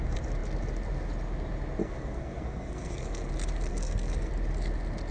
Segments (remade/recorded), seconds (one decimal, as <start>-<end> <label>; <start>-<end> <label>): 0.0-1.8 recorded; 1.8-3.3 remade; 3.3-3.7 recorded; 3.7-4.3 remade; 4.3-5.1 recorded